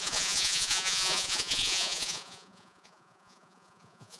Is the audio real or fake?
fake